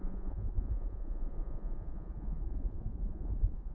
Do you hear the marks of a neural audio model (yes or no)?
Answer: yes